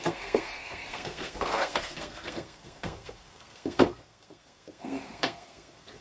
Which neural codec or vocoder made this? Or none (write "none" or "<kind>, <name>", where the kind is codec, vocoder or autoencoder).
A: codec, SNAC